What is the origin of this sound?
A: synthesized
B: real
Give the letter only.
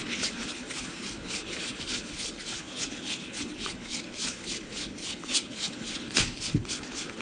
A